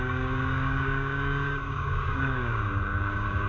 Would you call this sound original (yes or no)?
no